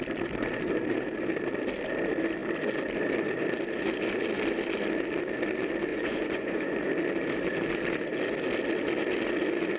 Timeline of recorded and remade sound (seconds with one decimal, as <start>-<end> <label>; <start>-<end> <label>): 0.0-5.9 recorded; 5.9-6.9 remade; 6.9-9.8 recorded